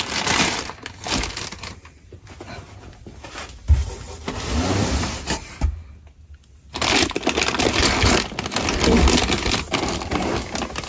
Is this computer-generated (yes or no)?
no